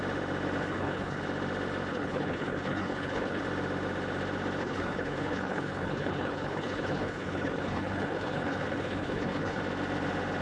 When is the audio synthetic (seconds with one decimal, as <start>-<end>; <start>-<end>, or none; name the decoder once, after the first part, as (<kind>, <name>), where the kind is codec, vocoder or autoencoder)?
0.6-1.2 (codec, HILCodec); 1.9-3.4; 4.6-9.6